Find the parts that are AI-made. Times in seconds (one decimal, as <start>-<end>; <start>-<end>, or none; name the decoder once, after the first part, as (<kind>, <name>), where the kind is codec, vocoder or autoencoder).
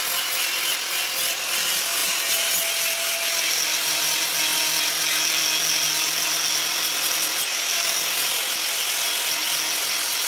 2.0-2.5 (vocoder, BigVGAN v2)